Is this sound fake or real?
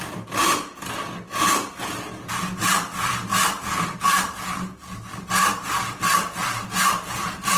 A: real